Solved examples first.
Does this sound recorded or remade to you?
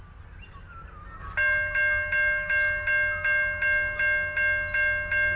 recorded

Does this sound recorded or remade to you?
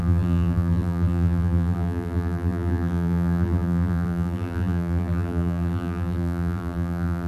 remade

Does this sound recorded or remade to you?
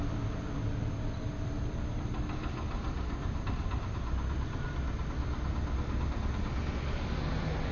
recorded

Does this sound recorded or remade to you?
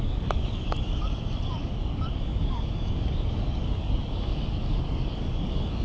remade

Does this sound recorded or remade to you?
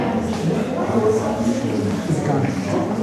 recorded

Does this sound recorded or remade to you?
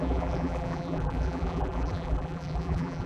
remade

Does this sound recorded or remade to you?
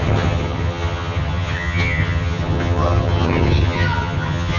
remade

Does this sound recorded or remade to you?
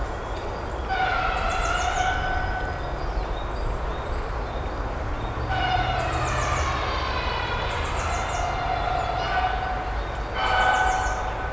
recorded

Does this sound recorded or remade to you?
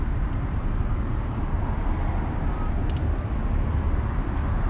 recorded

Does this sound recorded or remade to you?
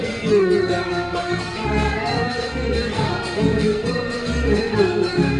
remade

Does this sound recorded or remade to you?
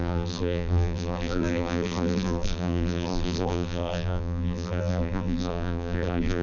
remade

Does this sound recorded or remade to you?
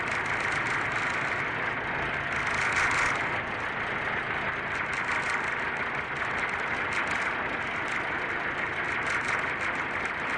recorded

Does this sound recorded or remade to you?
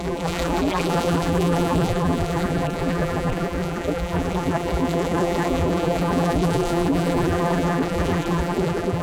remade